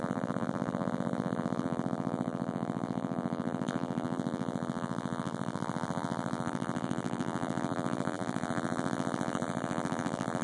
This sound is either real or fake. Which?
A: fake